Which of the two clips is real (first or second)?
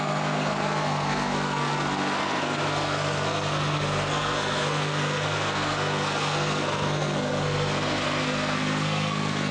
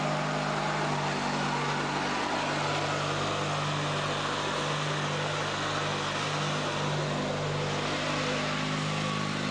second